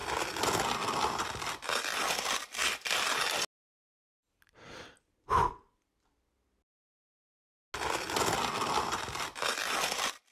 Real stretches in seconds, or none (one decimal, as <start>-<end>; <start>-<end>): 0.0-10.3